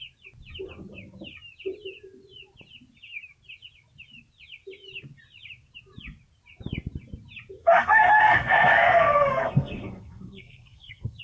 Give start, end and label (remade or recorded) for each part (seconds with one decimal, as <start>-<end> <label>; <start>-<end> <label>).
0.0-7.6 recorded; 7.6-11.2 remade